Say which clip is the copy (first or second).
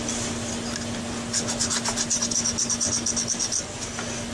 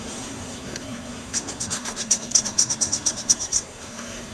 second